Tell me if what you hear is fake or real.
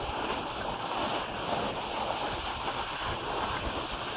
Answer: fake